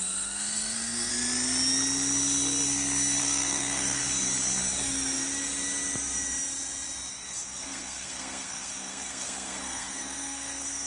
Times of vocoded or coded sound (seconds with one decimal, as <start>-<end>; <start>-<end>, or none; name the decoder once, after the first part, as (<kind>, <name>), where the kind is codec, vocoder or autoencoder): 0.0-1.1 (codec, SNAC); 3.2-4.0; 7.1-10.9